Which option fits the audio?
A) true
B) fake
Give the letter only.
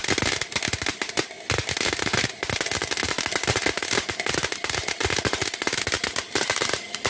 A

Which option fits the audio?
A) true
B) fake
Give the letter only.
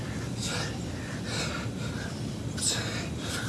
A